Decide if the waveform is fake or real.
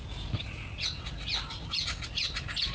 real